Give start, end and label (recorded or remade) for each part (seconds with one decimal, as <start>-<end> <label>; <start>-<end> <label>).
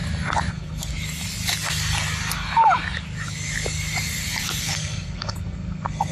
0.0-0.5 recorded; 0.5-0.9 remade; 0.9-4.6 recorded; 4.6-6.1 remade